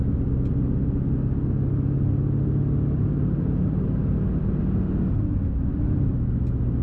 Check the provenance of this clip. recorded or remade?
recorded